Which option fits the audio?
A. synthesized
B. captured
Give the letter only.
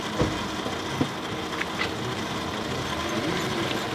B